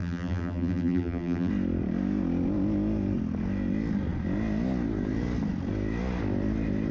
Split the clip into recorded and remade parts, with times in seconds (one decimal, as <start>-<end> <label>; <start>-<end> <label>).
0.0-1.5 remade; 1.5-6.9 recorded